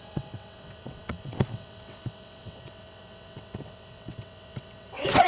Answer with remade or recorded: remade